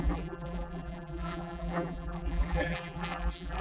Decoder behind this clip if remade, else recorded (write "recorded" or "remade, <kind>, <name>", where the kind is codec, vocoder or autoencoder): remade, vocoder, BigVGAN v2